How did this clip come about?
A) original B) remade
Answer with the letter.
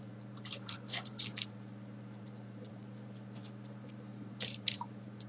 B